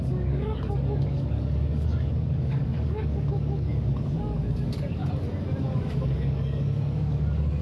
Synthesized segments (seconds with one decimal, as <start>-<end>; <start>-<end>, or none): 0.0-5.0; 5.6-7.6